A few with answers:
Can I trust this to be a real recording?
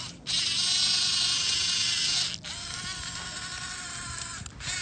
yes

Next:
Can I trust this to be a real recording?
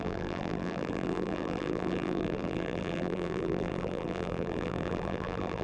no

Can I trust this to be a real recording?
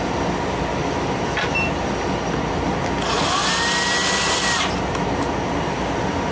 yes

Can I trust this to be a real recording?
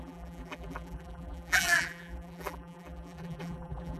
no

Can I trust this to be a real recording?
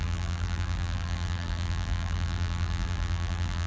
no